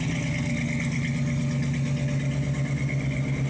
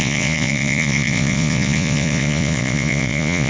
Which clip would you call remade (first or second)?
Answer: second